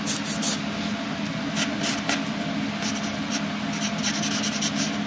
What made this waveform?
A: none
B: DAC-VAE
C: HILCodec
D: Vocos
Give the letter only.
A